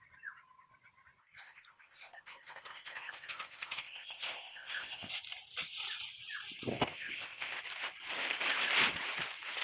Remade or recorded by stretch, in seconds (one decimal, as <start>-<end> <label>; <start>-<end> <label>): 0.0-1.2 recorded; 1.2-5.1 remade; 5.1-6.7 recorded; 6.7-7.6 remade; 7.6-9.6 recorded